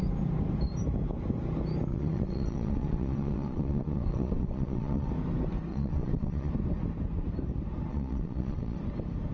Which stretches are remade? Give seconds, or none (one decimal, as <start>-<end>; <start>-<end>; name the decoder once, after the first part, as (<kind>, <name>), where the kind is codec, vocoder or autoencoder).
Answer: 1.9-5.1 (vocoder, WaveNeXt); 5.7-6.5; 7.9-8.8